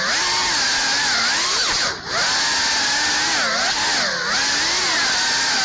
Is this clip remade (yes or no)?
no